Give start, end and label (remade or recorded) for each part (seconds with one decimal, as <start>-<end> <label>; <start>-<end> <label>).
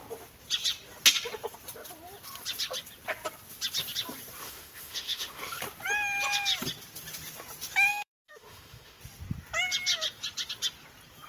0.0-4.4 recorded; 4.4-5.6 remade; 5.6-7.9 recorded; 7.9-9.0 remade; 9.0-11.3 recorded